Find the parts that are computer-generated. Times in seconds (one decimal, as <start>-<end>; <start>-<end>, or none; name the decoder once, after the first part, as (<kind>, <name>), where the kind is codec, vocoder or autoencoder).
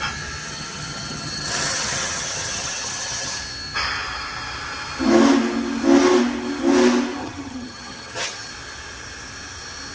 0.4-3.4 (vocoder, HiFi-GAN); 7.2-8.5